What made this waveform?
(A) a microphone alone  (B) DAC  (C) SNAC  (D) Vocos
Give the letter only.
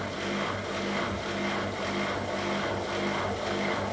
A